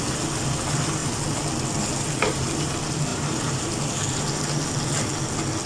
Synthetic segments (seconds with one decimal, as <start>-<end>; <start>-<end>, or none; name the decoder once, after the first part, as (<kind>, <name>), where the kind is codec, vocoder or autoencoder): 3.1-3.7 (vocoder, BigVGAN v2)